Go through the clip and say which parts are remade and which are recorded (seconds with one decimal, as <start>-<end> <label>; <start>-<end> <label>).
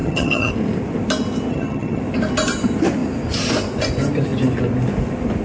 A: 0.0-0.5 remade; 0.5-1.5 recorded; 1.5-2.0 remade; 2.0-5.4 recorded